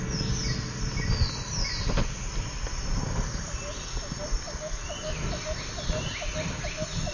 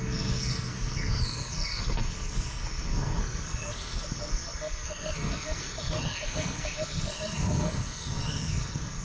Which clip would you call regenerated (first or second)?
second